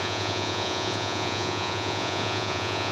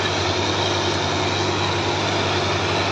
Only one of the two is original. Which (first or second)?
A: second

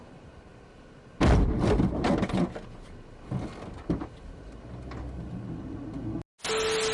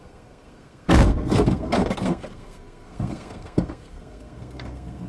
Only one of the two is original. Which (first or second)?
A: first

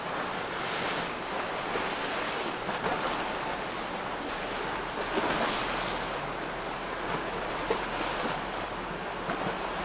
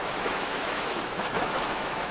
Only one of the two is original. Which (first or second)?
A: first